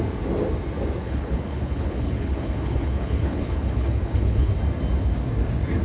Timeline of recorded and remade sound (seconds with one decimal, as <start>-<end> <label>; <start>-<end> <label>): 0.0-1.0 recorded; 1.0-4.5 remade; 4.5-5.8 recorded